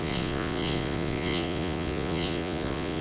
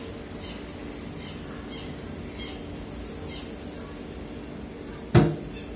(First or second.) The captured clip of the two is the second